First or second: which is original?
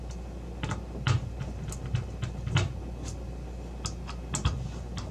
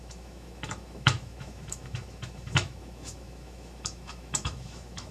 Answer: first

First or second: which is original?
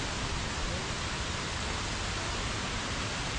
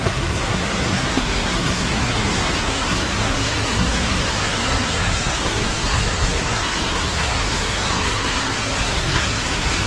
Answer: first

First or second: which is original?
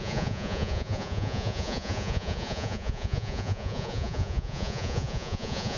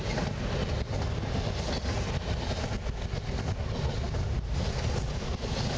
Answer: second